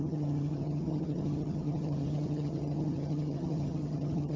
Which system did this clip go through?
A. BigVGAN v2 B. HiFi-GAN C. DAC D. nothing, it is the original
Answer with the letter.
B